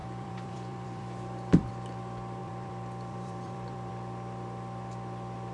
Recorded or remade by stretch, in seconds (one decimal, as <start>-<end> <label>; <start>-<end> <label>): 0.0-1.7 remade; 1.7-2.4 recorded; 2.4-3.9 remade; 3.9-5.5 recorded